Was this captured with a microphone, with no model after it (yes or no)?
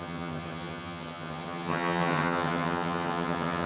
no